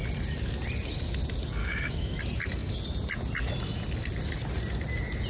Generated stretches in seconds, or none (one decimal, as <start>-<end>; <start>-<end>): 1.6-2.2